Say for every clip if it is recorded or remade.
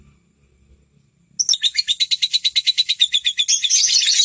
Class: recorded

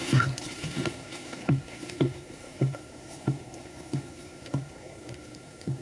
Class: remade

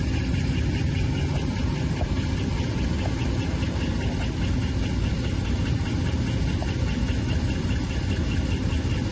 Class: recorded